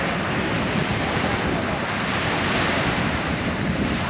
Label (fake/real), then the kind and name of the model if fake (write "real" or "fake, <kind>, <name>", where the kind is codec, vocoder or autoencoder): fake, vocoder, BigVGAN v2